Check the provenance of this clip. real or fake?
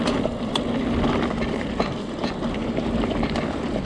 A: real